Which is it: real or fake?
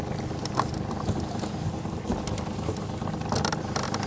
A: real